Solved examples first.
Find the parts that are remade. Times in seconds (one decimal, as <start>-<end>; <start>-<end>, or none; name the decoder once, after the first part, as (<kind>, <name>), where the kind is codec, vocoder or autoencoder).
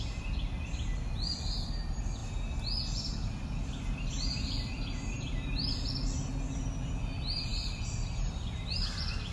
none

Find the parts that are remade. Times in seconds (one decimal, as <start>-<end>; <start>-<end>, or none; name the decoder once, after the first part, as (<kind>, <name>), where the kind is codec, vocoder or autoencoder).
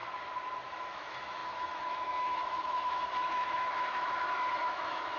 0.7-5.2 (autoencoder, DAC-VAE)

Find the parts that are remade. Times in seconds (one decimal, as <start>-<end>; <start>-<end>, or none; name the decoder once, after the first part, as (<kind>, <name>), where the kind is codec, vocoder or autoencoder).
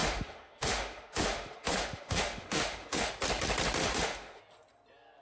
0.0-3.1 (autoencoder, DAC-VAE); 3.8-4.4